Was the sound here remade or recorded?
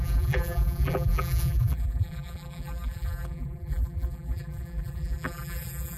remade